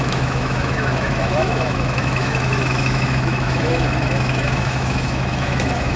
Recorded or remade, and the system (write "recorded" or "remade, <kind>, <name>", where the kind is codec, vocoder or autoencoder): remade, autoencoder, DAC-VAE